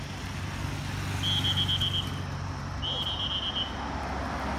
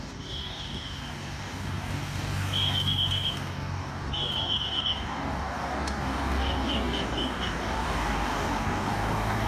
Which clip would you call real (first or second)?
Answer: first